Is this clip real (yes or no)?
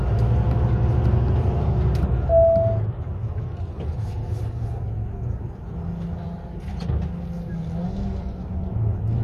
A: yes